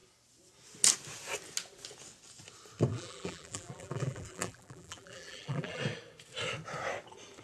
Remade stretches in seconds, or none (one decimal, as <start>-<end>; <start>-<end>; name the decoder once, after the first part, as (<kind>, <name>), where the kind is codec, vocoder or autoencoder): 2.9-5.8 (vocoder, BigVGAN v2)